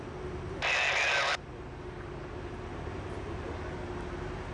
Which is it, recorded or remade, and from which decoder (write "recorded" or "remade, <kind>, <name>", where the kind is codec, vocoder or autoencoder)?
recorded